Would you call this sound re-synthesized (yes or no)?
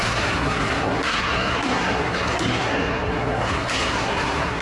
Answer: yes